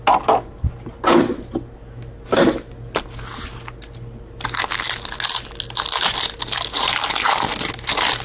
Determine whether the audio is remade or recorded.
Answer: recorded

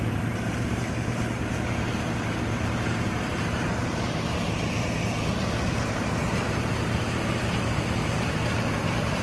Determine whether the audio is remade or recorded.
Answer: remade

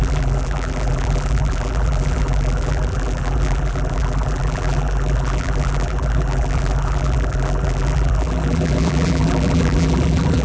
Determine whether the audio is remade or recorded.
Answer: remade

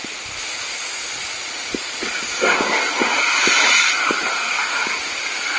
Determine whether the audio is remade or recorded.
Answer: recorded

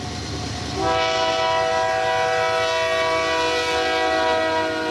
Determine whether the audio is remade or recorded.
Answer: recorded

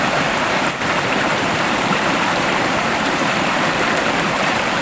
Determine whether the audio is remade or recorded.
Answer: remade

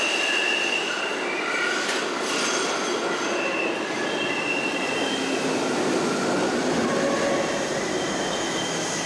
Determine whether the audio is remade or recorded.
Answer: recorded